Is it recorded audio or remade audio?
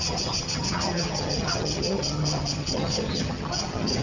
remade